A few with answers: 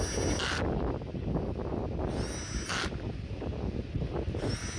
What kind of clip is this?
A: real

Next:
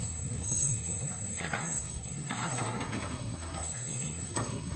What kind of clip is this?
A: fake